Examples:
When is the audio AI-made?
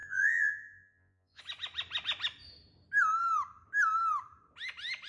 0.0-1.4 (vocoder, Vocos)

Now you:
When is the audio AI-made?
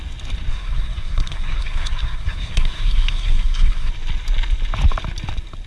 0.5-3.9 (codec, SNAC)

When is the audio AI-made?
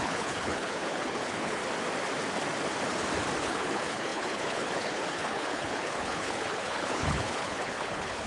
0.0-1.6 (codec, HILCodec); 3.4-8.3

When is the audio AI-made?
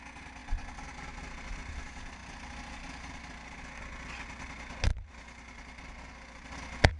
none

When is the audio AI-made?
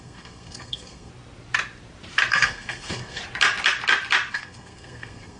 0.0-1.1 (codec, SNAC); 2.3-3.2; 4.3-5.4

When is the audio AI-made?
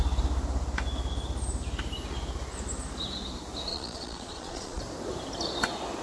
3.7-4.8 (vocoder, Vocos)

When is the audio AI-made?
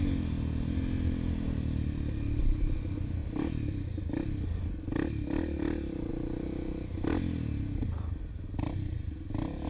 none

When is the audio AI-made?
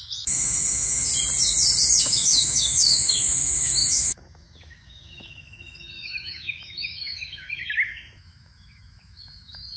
0.0-1.1 (autoencoder, DAC-VAE); 2.0-9.8